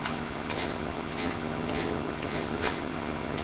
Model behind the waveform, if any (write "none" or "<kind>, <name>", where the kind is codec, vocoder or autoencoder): vocoder, HiFi-GAN